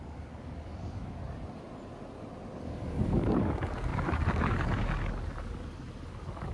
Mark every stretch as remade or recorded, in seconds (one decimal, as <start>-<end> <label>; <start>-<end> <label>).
0.0-1.2 remade; 1.2-2.6 recorded; 2.6-6.5 remade